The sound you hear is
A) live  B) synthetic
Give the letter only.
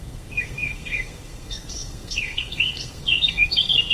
B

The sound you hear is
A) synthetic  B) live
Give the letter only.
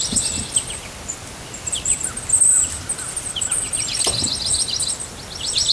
B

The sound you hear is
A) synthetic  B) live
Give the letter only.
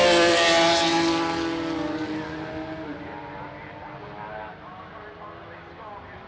B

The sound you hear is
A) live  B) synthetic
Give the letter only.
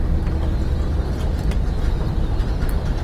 A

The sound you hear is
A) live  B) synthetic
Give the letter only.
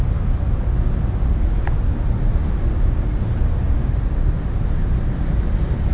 A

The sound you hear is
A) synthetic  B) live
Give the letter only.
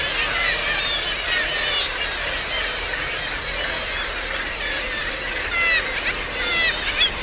B